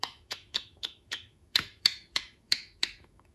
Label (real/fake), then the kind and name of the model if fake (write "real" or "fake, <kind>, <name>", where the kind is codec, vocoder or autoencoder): fake, autoencoder, DAC-VAE